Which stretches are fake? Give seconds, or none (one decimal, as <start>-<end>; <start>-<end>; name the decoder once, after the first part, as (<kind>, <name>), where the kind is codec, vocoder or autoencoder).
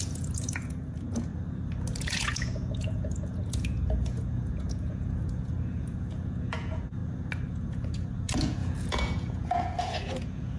0.0-1.3 (vocoder, Vocos); 2.0-7.0; 7.5-10.6